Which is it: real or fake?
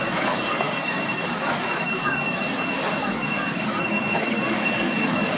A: fake